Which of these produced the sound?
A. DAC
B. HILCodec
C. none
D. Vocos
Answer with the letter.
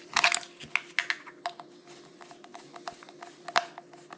C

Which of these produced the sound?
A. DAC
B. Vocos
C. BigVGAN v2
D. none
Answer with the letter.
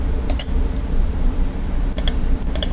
D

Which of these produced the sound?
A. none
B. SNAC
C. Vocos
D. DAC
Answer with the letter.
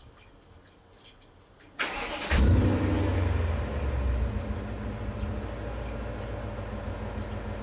A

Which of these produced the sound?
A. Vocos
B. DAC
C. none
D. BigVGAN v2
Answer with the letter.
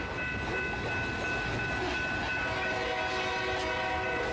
C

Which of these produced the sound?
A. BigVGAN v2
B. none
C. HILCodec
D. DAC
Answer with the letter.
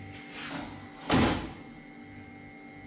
B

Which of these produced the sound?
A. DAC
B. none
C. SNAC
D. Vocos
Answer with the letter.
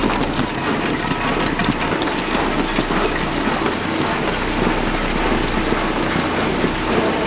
B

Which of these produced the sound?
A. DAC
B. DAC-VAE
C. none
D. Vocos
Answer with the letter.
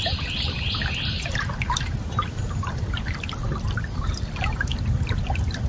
C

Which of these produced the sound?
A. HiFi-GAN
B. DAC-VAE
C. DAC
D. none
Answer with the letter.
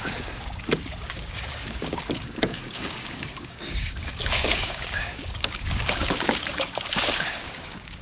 C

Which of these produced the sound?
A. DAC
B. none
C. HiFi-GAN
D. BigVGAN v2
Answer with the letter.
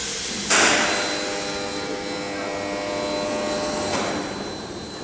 B